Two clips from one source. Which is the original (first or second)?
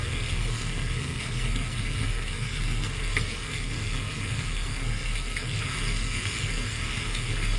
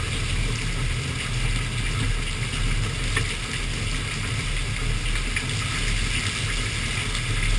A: second